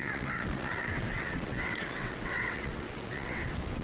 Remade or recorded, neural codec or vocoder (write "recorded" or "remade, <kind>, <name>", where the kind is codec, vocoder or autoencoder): remade, vocoder, WaveNeXt